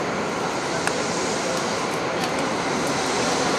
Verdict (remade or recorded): recorded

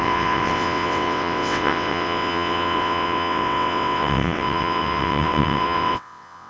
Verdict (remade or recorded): remade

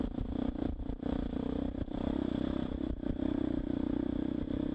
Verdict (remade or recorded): remade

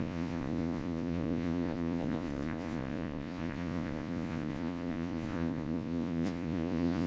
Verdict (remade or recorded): remade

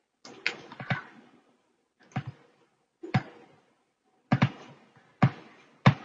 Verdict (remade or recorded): recorded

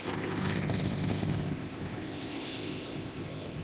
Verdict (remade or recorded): remade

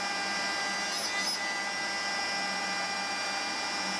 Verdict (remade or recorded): recorded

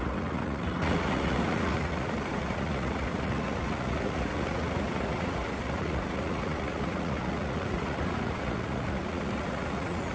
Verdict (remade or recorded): remade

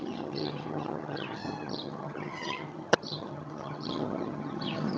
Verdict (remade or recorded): remade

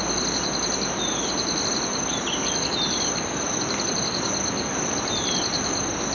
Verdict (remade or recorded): recorded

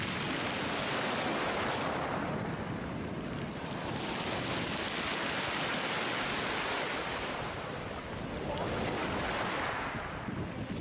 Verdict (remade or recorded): recorded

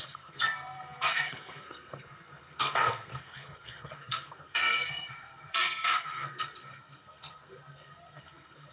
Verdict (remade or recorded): remade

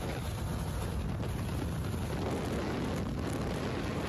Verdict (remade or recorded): recorded